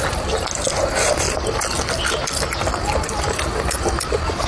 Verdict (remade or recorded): recorded